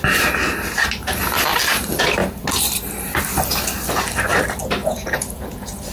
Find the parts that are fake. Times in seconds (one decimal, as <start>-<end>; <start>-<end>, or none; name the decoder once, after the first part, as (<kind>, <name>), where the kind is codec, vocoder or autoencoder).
4.8-5.9 (vocoder, Vocos)